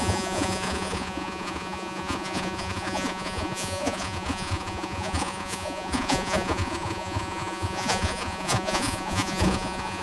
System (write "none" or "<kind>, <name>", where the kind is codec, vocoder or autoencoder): vocoder, Vocos